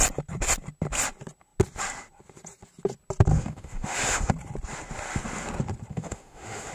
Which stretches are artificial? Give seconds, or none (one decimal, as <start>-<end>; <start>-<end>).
3.3-4.3; 5.9-6.7